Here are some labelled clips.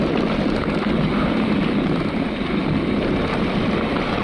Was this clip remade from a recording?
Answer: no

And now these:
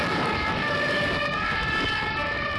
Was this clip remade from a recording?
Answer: yes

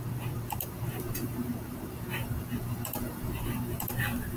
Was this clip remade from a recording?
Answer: yes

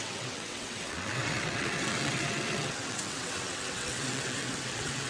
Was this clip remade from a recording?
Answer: yes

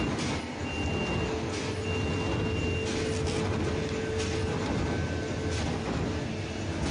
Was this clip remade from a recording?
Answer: no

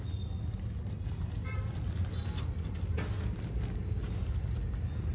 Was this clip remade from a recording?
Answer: no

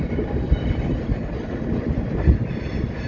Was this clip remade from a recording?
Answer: no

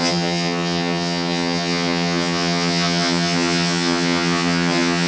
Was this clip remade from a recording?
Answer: yes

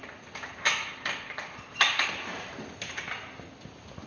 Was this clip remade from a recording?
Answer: no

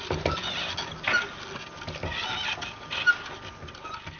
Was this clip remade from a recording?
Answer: no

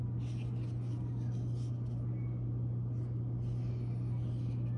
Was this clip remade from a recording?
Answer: no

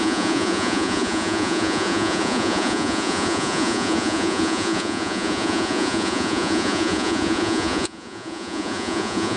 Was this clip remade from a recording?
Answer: yes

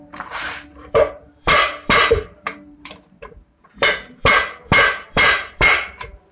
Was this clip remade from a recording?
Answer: yes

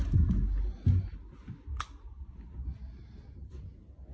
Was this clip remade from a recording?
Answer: no